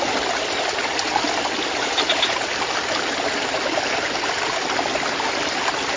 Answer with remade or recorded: recorded